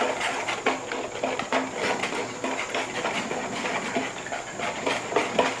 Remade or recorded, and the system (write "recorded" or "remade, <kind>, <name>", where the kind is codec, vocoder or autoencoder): recorded